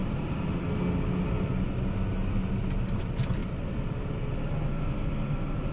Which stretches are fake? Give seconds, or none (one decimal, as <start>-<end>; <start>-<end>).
0.0-0.6